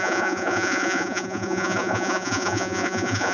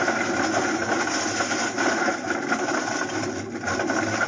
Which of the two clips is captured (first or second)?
second